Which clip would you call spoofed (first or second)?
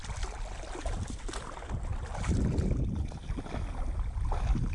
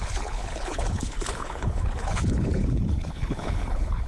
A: second